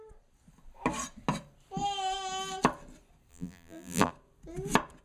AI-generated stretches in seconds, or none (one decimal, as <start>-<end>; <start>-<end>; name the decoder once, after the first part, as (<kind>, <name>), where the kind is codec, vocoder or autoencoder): 3.3-4.1 (vocoder, BigVGAN v2)

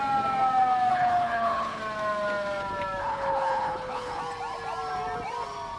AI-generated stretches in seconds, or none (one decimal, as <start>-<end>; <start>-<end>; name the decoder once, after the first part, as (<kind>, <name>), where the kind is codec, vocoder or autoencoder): 0.9-1.8 (codec, HILCodec); 3.0-4.2

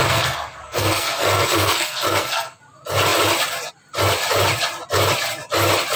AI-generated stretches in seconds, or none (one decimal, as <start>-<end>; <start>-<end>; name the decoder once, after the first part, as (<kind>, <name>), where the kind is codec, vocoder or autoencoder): 0.0-2.6 (codec, SNAC)

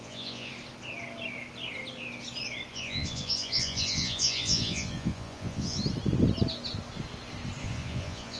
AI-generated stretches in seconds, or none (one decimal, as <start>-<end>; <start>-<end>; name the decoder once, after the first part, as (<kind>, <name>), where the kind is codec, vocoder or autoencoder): 0.0-0.5 (vocoder, Vocos); 2.7-5.8; 7.6-8.4

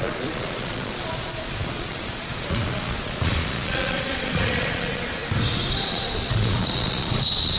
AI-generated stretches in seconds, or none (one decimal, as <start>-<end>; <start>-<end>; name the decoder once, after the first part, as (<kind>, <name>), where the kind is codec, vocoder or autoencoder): 0.0-5.2 (vocoder, Vocos); 5.8-7.6

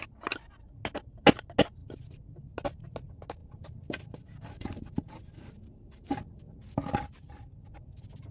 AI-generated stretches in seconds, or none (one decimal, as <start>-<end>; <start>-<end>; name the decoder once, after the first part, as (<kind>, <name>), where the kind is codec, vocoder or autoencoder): 3.4-6.2 (vocoder, BigVGAN v2)

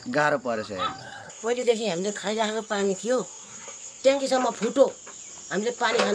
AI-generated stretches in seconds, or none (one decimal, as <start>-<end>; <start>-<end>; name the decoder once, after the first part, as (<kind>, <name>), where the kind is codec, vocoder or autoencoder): 1.0-4.2 (codec, SNAC)